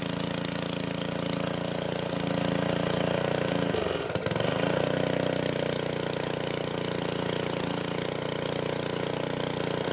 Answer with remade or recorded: recorded